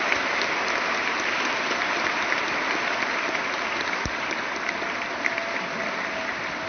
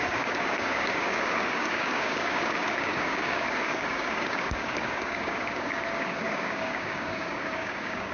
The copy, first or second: second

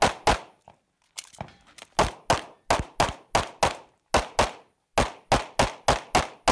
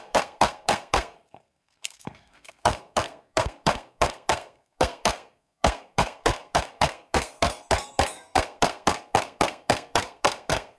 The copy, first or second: second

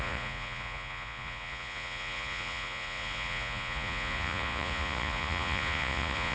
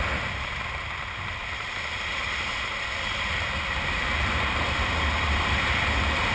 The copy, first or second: first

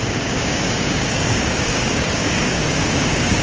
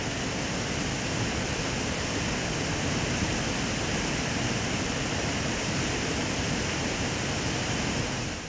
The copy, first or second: first